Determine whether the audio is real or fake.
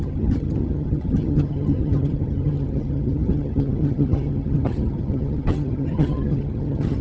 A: fake